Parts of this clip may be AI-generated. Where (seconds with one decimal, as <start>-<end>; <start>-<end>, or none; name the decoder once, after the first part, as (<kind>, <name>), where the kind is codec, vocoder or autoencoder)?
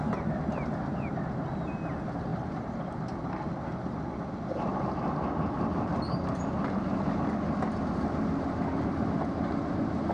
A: 2.3-3.0 (vocoder, BigVGAN v2)